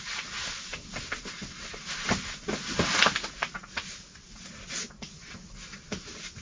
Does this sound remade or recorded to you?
recorded